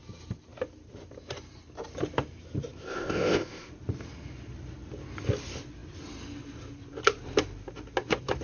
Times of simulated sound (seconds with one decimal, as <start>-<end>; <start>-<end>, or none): 2.8-3.7